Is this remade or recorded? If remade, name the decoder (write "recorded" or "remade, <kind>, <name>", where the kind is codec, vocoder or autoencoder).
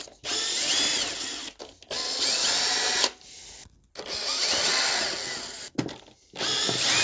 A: recorded